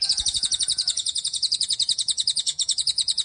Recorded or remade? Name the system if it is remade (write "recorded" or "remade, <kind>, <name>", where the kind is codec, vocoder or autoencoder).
remade, vocoder, Vocos